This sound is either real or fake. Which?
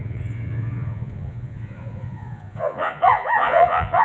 fake